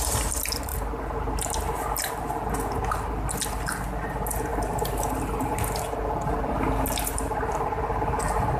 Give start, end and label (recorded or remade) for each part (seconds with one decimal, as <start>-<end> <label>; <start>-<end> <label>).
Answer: 0.0-4.5 recorded; 4.5-6.4 remade; 6.4-8.6 recorded